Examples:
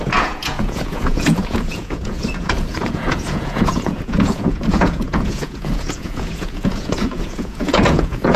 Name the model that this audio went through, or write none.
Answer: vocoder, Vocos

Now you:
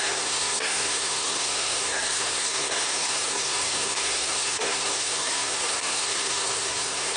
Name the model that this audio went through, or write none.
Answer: codec, SNAC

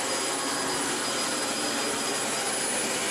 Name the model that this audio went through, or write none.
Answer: none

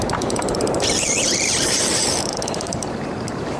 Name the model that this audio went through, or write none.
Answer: vocoder, BigVGAN v2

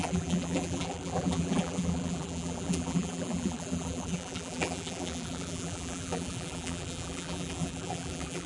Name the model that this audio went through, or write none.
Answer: vocoder, BigVGAN v2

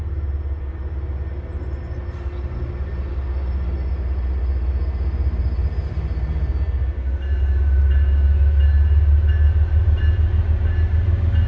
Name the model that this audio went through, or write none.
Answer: none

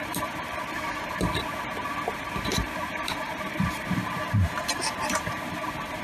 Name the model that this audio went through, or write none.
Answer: vocoder, BigVGAN v2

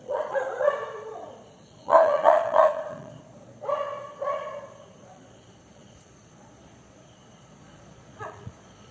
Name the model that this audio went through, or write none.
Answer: vocoder, Vocos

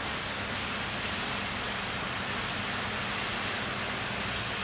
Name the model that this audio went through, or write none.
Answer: none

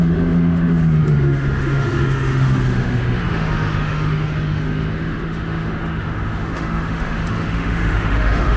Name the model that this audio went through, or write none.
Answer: autoencoder, DAC-VAE